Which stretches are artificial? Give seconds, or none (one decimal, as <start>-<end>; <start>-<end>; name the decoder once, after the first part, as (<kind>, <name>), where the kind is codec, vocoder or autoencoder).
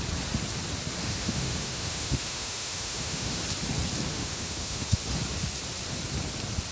1.0-3.4 (autoencoder, DAC-VAE); 4.1-5.0